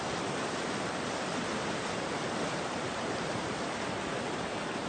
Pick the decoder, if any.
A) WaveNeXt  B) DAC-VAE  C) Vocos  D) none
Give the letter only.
D